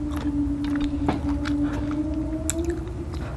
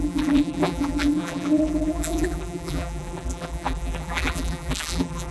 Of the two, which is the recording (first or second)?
first